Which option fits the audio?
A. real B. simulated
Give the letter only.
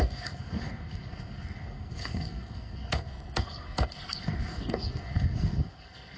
B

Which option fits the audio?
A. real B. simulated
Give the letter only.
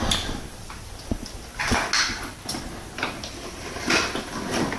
A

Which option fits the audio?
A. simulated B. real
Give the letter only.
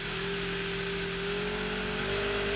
B